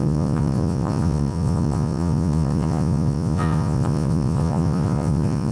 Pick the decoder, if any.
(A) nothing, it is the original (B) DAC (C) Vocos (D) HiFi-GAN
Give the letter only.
C